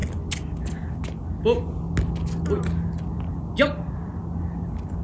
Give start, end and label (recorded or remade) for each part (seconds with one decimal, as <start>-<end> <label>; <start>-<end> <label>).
0.0-5.0 recorded